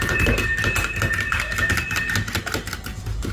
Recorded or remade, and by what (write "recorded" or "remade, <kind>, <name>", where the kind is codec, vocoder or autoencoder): recorded